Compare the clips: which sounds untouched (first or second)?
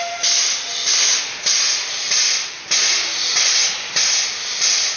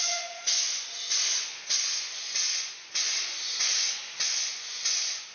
first